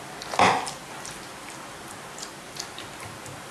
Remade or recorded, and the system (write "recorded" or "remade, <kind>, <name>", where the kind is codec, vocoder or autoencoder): recorded